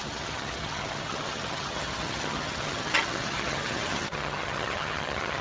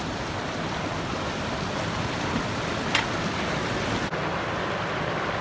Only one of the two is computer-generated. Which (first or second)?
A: first